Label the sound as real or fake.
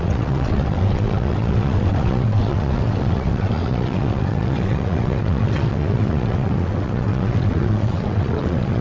fake